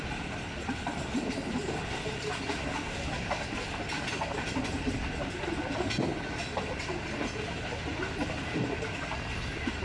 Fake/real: real